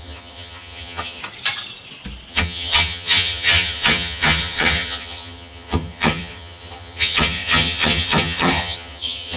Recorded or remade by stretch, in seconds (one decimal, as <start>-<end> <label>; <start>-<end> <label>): 0.0-1.2 remade; 1.2-2.3 recorded; 2.3-9.4 remade